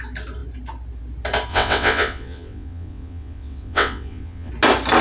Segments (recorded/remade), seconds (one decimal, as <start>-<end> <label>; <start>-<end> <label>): 0.0-1.5 recorded; 1.5-4.5 remade; 4.5-5.0 recorded